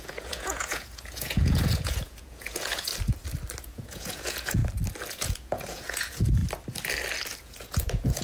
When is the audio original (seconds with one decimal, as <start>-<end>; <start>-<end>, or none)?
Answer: 2.9-3.6; 4.6-5.1; 6.4-7.4